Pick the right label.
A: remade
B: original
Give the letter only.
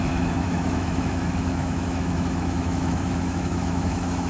A